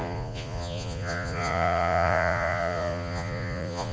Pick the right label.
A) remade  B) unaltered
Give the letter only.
A